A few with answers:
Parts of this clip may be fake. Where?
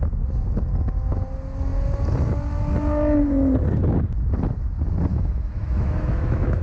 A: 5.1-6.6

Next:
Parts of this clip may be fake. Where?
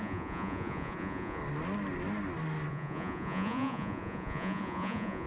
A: 0.0-1.4; 2.7-5.3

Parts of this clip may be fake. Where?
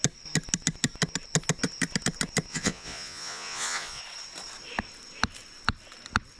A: 2.5-4.0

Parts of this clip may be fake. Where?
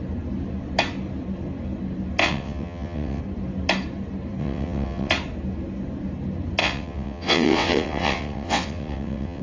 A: 2.2-3.2; 4.4-5.1; 6.6-9.4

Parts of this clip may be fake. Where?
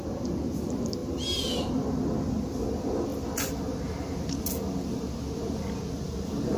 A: none